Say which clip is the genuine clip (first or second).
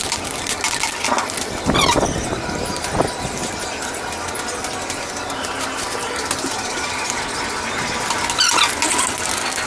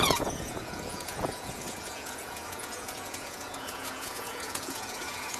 first